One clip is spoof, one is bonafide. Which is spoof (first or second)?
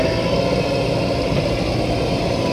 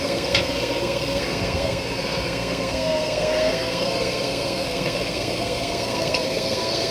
second